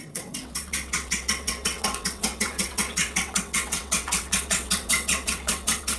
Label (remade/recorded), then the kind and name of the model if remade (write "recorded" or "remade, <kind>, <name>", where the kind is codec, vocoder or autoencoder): remade, vocoder, WaveNeXt